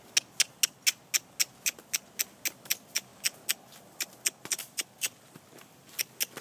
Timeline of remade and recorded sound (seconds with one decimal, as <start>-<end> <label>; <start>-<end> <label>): 0.0-6.4 recorded